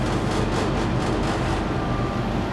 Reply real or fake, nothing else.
real